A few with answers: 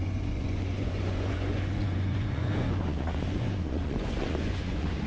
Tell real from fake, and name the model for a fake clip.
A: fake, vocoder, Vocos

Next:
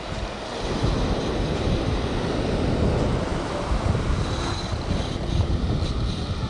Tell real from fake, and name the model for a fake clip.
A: real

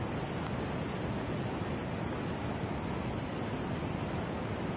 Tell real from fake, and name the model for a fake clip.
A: real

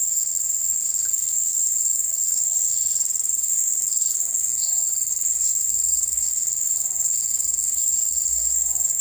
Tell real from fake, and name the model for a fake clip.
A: fake, codec, SNAC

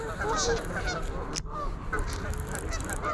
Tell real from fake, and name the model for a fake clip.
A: real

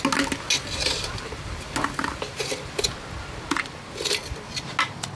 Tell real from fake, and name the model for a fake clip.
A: real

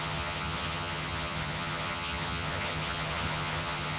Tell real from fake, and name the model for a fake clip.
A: fake, vocoder, HiFi-GAN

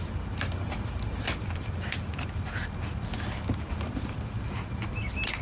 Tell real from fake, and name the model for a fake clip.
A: real